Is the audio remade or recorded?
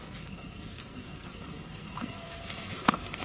remade